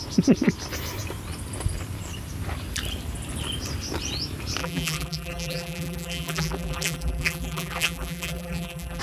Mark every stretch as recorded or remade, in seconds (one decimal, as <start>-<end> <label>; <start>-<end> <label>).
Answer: 0.0-4.6 recorded; 4.6-9.0 remade